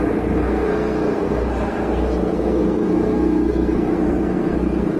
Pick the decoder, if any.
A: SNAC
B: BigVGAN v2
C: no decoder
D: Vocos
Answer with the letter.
A